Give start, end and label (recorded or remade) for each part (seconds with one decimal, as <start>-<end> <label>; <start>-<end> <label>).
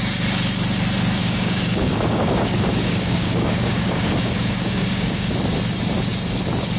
0.0-1.2 recorded; 1.2-5.3 remade; 5.3-6.8 recorded